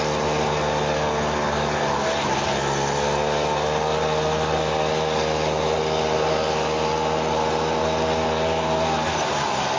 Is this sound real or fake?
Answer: real